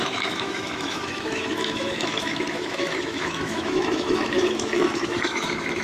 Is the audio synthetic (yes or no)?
yes